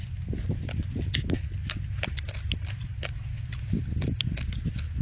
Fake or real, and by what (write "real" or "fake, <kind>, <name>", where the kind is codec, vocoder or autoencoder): real